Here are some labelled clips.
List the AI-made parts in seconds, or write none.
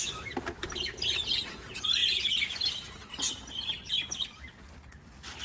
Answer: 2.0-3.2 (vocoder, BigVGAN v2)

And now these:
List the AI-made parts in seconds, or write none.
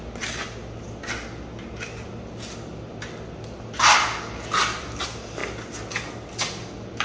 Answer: none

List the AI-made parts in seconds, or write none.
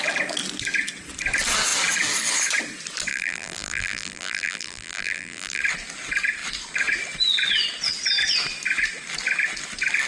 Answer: 3.1-5.6 (vocoder, BigVGAN v2)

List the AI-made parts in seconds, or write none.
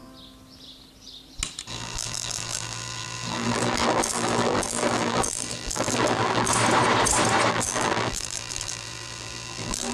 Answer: 1.7-6.5 (vocoder, BigVGAN v2); 7.5-9.9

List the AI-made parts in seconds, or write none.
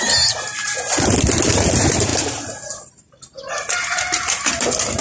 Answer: none